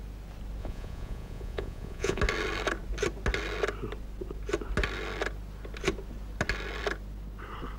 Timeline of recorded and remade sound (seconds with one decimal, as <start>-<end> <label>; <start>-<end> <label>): 0.0-0.6 recorded; 0.6-2.2 remade; 2.2-7.8 recorded

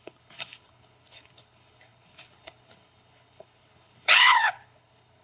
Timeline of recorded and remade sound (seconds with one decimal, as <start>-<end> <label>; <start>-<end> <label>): 0.0-5.2 remade

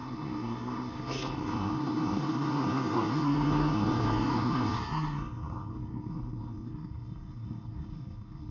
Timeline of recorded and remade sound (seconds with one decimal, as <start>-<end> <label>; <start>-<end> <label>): 0.0-8.5 remade